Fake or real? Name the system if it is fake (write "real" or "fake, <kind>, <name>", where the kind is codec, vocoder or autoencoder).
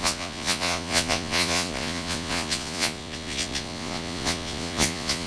fake, vocoder, Vocos